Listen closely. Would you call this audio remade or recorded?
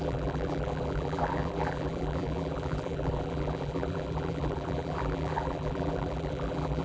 remade